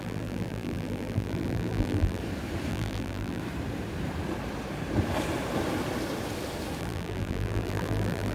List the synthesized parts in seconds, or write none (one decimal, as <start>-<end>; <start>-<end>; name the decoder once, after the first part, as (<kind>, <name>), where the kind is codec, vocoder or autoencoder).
0.0-2.2 (vocoder, BigVGAN v2); 2.7-3.4; 6.8-8.3